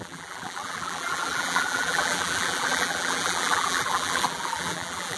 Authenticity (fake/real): fake